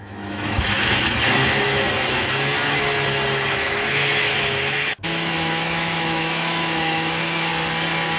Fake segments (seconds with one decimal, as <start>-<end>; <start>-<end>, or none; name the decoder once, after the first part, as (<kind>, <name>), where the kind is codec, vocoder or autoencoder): 0.0-1.5 (autoencoder, DAC-VAE); 3.5-7.5